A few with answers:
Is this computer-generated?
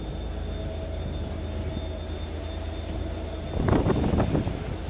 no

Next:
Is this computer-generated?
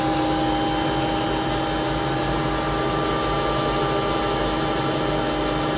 no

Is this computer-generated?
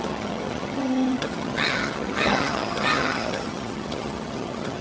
yes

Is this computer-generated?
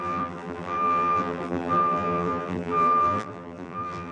yes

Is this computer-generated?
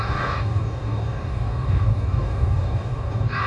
yes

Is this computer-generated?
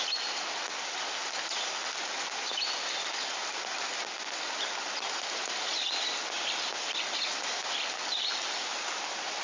no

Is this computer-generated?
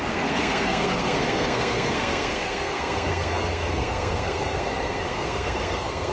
yes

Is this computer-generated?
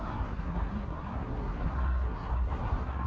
yes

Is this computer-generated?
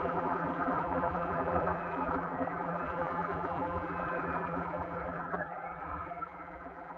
yes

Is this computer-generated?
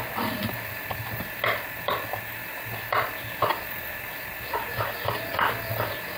no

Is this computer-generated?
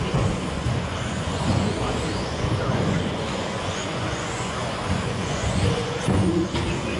yes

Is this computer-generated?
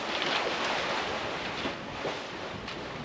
no